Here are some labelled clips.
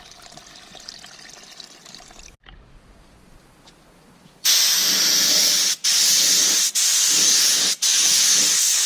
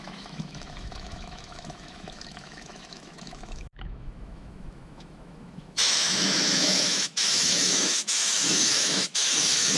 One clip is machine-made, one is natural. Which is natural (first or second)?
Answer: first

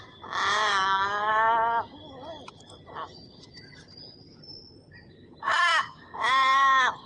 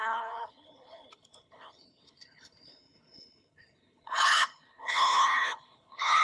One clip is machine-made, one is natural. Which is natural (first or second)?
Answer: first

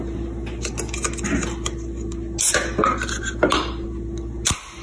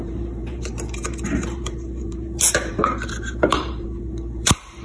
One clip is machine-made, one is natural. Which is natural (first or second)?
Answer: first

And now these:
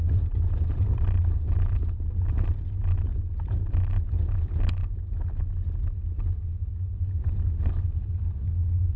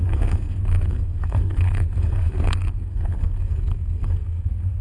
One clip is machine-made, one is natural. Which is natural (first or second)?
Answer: first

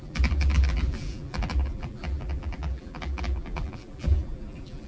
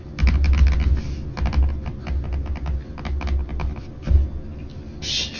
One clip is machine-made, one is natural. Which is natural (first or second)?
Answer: second